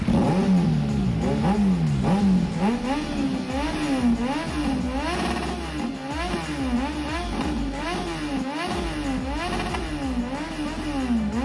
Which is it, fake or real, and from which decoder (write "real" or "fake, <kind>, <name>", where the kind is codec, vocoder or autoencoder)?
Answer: real